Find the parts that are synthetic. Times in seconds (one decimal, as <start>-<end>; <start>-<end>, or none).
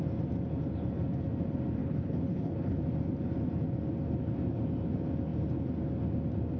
1.8-2.8